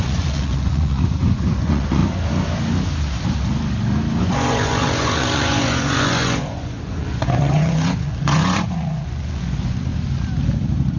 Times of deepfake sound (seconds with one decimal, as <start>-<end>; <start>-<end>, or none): 0.0-2.0; 4.2-9.9